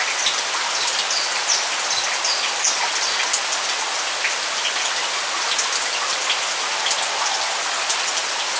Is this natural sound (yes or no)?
yes